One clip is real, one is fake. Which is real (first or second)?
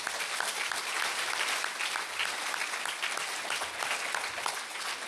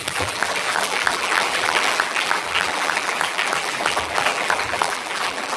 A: first